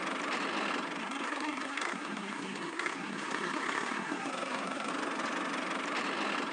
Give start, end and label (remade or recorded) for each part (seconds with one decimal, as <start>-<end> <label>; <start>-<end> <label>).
0.0-1.0 recorded; 1.0-4.9 remade; 4.9-6.5 recorded